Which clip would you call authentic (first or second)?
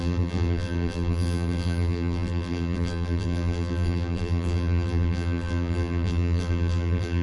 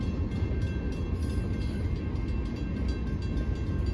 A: second